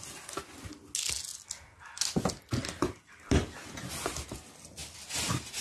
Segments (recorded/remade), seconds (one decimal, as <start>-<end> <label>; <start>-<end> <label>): 0.0-5.6 recorded